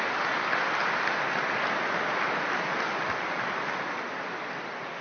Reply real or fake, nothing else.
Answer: real